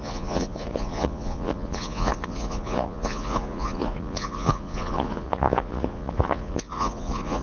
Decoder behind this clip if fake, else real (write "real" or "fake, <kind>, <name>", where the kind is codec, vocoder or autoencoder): fake, vocoder, Vocos